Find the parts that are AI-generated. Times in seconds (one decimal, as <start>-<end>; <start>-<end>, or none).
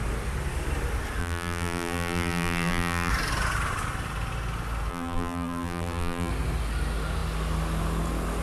1.2-3.1; 4.9-6.3